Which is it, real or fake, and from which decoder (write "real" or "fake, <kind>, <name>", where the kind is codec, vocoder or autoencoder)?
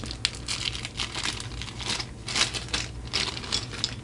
real